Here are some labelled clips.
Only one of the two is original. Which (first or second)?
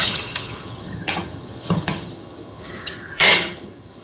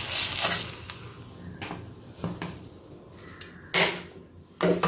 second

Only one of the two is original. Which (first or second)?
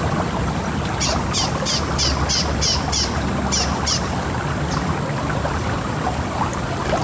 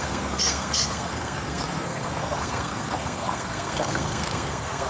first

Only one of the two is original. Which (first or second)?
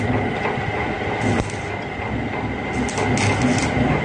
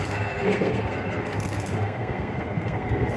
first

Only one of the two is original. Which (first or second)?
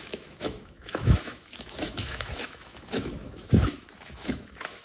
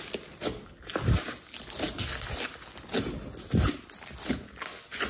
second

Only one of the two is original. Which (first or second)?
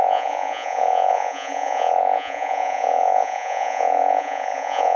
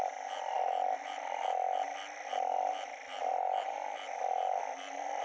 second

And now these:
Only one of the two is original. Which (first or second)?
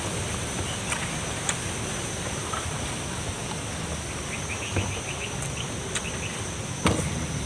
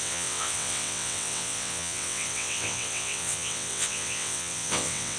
first